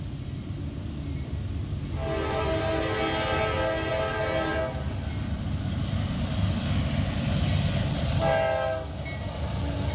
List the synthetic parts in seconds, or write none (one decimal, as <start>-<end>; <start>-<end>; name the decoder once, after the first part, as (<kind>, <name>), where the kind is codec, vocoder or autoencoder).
none